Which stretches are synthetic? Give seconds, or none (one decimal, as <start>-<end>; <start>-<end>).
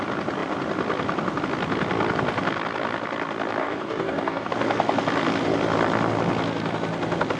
3.6-4.5